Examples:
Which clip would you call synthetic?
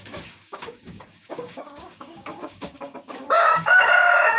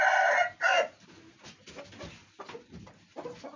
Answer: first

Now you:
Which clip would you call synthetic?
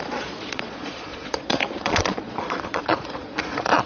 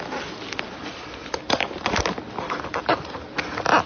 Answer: first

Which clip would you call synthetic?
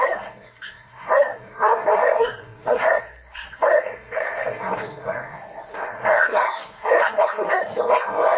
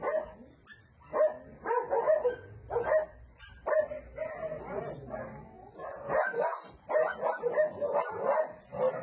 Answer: first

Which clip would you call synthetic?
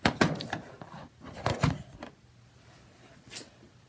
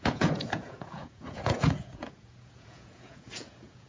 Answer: second